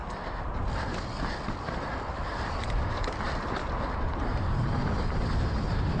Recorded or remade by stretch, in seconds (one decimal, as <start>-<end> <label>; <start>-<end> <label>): 0.0-2.3 recorded; 2.3-5.2 remade; 5.2-6.0 recorded